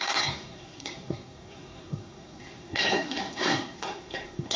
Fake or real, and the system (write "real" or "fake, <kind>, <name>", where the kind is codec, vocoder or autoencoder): fake, codec, SNAC